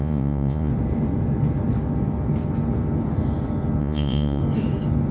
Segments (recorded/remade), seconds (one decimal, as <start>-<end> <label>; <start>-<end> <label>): 0.0-0.7 remade; 0.7-3.8 recorded; 3.8-4.4 remade; 4.4-5.1 recorded